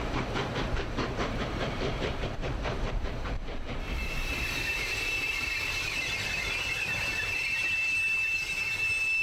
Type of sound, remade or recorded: remade